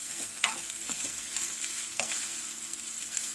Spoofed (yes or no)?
yes